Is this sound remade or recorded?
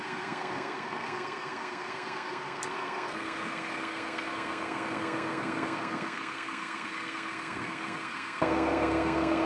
remade